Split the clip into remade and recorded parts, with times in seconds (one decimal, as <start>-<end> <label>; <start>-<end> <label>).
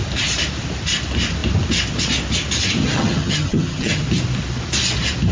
0.0-2.8 recorded; 2.8-4.0 remade; 4.0-5.3 recorded